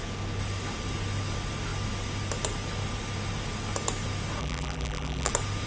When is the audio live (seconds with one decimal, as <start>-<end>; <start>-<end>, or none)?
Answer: 0.0-4.4; 5.3-5.7